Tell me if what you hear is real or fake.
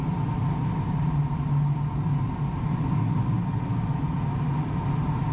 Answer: real